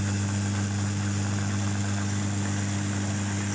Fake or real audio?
real